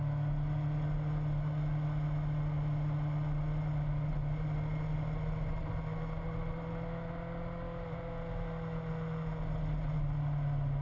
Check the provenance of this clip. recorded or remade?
recorded